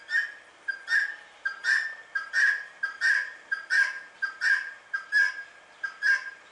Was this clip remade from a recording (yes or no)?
no